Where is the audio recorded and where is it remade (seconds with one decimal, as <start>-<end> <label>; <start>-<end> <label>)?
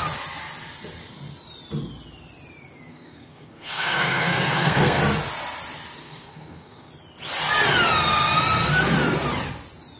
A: 0.0-2.9 recorded; 2.9-5.0 remade; 5.0-6.0 recorded; 6.0-6.9 remade; 6.9-10.0 recorded